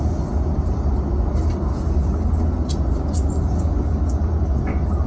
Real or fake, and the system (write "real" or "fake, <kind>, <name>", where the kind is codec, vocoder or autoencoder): real